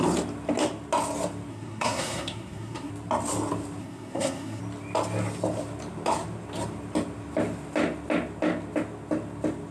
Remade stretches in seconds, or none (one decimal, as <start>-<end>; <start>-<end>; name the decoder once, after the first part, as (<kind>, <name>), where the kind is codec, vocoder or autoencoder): 1.5-2.9 (codec, SNAC); 3.8-4.6